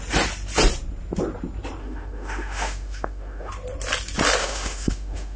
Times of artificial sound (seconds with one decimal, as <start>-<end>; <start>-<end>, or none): 1.8-3.5; 4.4-5.4